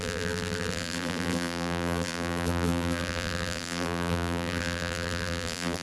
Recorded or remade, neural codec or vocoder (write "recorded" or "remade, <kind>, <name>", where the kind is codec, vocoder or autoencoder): remade, vocoder, BigVGAN v2